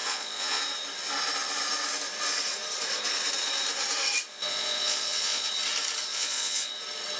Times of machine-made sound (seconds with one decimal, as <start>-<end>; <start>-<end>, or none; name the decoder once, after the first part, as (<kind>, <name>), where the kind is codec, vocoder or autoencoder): 0.0-0.6 (vocoder, Vocos); 4.3-5.5; 6.1-6.7

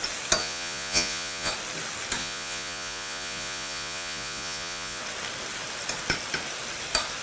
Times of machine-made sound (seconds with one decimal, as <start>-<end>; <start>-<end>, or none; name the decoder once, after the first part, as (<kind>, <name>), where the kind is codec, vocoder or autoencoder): 0.4-1.5 (vocoder, Vocos); 2.2-5.0